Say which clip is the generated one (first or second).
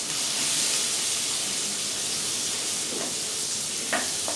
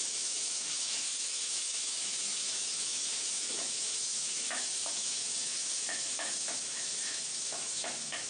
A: second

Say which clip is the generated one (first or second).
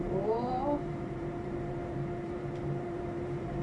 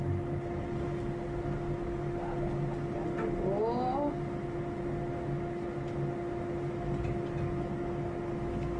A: first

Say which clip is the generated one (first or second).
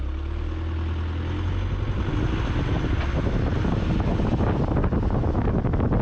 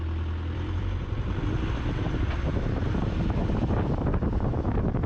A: second